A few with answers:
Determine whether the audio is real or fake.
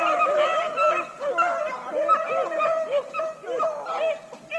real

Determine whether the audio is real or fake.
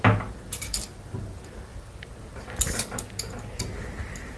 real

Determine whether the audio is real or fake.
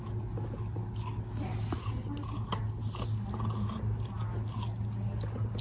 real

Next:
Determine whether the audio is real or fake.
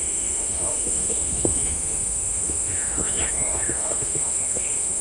fake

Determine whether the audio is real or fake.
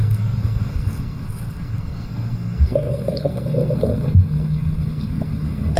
fake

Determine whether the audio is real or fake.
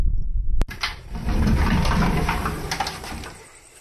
real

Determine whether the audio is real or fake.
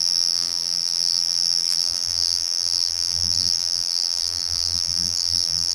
fake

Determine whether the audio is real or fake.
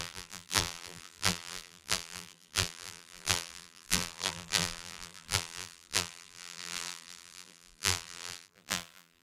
fake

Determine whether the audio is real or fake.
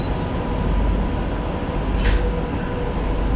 real